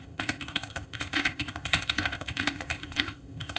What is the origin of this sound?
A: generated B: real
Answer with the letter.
A